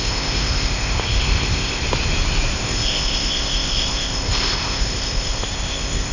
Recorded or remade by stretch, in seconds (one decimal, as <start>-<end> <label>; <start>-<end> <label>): 0.0-1.8 remade; 1.8-2.6 recorded; 2.6-6.1 remade